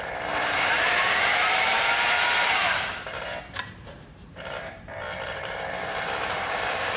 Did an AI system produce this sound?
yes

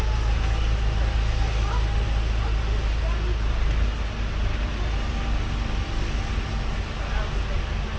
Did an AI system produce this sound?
no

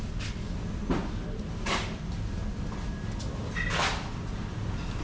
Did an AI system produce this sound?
no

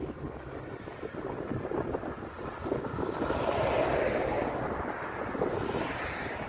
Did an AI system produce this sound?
yes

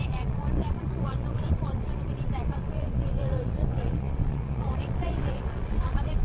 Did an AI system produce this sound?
yes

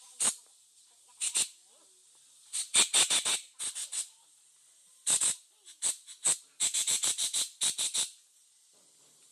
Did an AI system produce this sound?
no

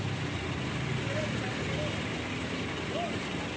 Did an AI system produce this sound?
no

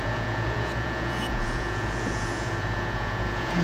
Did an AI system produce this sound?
yes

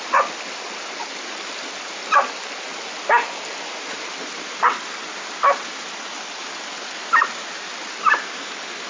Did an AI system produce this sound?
no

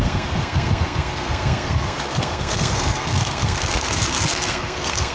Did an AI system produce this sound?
yes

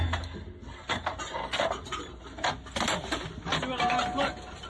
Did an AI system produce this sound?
no